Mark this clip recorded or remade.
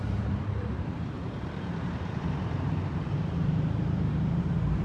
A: remade